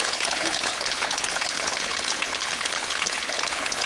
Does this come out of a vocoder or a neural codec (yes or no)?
yes